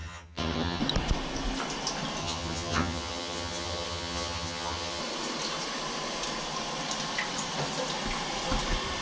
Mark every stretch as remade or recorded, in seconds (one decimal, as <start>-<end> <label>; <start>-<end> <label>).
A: 0.0-0.8 remade; 0.8-2.2 recorded; 2.2-5.0 remade; 5.0-9.0 recorded